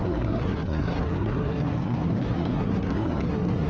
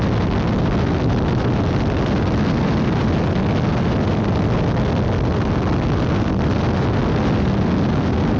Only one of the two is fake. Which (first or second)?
first